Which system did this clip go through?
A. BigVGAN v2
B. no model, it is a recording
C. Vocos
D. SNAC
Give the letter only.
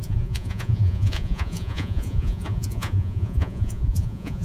C